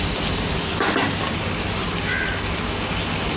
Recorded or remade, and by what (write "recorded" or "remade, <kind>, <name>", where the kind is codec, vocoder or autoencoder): recorded